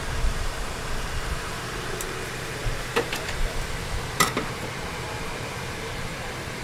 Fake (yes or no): yes